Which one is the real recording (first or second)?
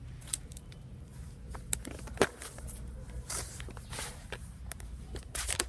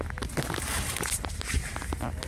second